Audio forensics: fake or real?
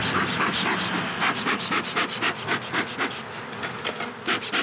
real